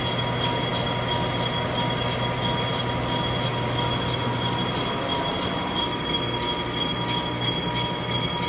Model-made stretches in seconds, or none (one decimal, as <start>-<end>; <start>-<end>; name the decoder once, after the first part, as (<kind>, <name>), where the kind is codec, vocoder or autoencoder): none